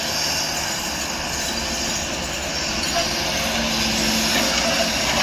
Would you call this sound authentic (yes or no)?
yes